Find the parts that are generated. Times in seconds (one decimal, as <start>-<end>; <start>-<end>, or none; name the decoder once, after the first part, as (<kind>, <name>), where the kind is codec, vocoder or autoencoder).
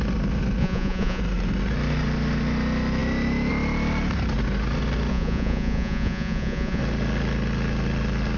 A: 0.6-1.2 (vocoder, Vocos); 5.1-6.8